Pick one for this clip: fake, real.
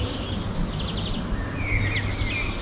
real